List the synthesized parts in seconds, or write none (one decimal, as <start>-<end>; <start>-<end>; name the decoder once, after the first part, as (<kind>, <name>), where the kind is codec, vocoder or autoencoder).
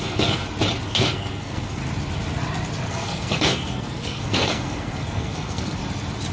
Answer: 0.0-0.4 (codec, SNAC); 0.9-1.8; 2.9-5.8